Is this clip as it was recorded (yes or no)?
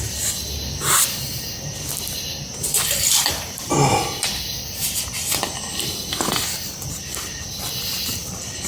yes